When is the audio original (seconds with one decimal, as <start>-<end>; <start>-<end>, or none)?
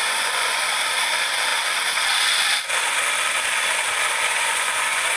0.8-4.2